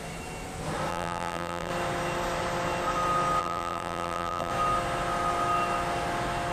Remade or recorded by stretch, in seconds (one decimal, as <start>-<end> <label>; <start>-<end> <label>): 0.0-0.9 recorded; 0.9-1.7 remade; 1.7-3.4 recorded; 3.4-4.5 remade; 4.5-6.5 recorded